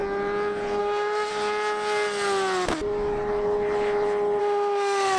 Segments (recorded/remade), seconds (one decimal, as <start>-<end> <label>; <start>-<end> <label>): 0.0-0.8 recorded; 0.8-1.3 remade; 1.3-4.4 recorded; 4.4-5.2 remade